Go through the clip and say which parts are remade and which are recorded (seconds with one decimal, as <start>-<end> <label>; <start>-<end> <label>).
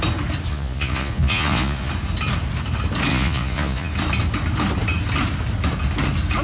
0.0-0.5 recorded; 0.5-1.9 remade; 1.9-3.1 recorded; 3.1-3.9 remade; 3.9-6.4 recorded